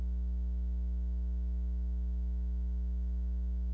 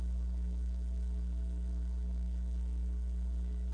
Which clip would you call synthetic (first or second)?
second